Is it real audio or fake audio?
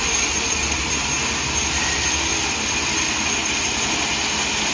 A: real